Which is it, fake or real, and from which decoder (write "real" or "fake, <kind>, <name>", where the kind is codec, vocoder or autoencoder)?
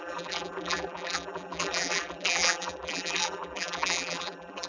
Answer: fake, vocoder, BigVGAN v2